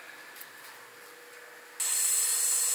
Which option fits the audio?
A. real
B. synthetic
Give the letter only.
A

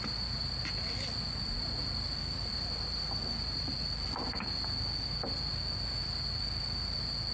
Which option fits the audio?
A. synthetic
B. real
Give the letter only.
B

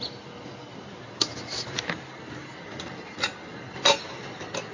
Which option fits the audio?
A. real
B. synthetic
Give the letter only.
A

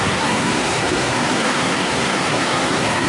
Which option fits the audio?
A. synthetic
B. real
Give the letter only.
A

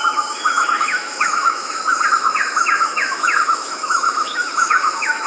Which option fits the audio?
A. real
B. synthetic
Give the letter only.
B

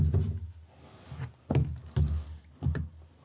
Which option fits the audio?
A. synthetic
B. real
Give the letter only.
B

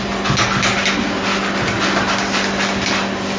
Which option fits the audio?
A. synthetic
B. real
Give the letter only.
B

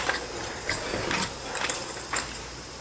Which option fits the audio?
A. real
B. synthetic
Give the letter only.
B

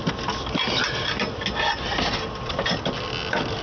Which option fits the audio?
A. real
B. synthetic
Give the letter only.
A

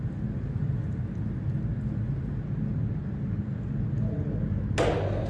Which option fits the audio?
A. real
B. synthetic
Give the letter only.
A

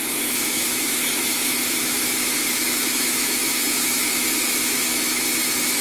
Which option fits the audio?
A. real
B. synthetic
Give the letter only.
B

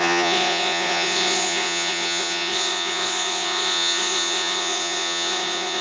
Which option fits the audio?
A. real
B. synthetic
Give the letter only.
B